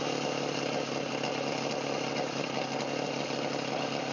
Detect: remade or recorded recorded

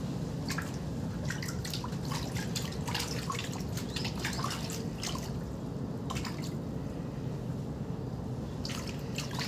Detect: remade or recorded recorded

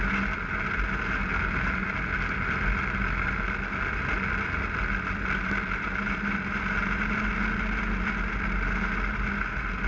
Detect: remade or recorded recorded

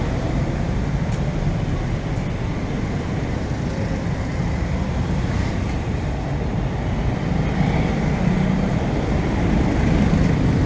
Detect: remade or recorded recorded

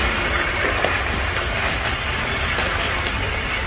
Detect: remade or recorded recorded